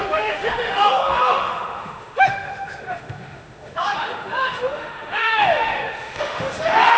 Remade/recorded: remade